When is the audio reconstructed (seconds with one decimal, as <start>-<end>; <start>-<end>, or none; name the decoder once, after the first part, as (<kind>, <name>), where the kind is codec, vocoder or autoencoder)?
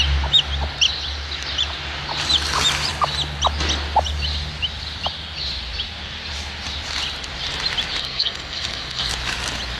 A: 8.0-9.1 (codec, SNAC)